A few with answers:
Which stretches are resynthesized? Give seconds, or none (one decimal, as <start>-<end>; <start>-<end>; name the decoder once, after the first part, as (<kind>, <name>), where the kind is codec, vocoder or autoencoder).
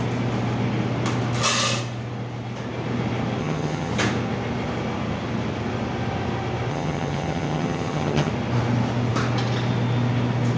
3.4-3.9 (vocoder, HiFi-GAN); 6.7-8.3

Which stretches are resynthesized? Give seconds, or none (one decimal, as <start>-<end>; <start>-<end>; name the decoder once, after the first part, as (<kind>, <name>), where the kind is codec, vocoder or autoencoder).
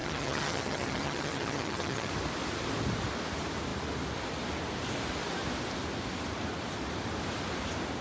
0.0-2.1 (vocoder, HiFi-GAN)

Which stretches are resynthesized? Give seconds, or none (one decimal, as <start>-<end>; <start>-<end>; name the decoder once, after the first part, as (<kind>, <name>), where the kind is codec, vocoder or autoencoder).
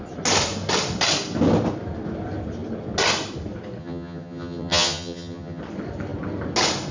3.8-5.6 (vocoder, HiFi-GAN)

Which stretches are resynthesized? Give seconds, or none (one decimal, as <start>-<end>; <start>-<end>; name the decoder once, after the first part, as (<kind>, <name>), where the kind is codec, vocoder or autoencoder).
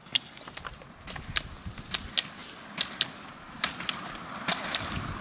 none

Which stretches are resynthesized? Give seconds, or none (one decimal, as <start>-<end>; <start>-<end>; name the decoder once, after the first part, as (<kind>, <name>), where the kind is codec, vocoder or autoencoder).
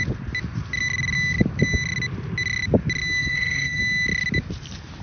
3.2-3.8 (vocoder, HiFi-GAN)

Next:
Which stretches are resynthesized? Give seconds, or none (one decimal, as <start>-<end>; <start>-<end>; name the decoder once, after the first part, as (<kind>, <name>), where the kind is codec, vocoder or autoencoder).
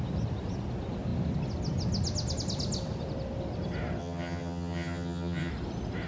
4.0-5.5 (vocoder, HiFi-GAN)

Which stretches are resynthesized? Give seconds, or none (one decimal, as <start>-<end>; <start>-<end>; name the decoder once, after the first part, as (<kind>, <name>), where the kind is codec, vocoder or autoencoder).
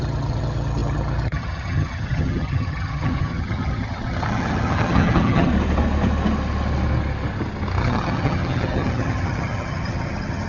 0.0-5.5 (vocoder, HiFi-GAN); 7.8-10.5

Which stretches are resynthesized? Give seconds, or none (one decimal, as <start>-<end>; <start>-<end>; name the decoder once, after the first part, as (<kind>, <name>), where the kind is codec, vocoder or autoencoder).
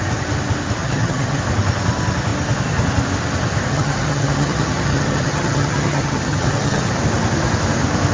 0.8-1.4 (vocoder, HiFi-GAN); 3.7-7.0